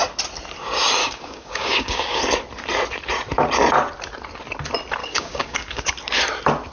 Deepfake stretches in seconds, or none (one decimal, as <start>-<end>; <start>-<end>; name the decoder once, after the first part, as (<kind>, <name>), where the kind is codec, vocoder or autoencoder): 1.0-2.2 (codec, DAC); 5.0-5.9